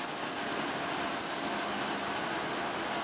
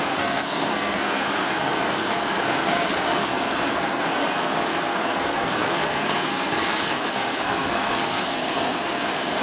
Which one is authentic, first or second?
first